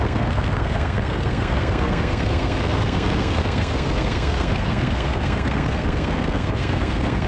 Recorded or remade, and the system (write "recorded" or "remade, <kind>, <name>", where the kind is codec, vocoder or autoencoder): remade, codec, SNAC